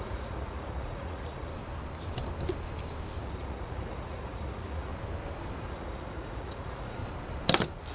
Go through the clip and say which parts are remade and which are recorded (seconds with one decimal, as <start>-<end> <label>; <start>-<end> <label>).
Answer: 0.0-1.5 remade; 1.5-3.2 recorded; 3.2-4.9 remade; 4.9-5.6 recorded; 5.6-7.0 remade; 7.0-7.9 recorded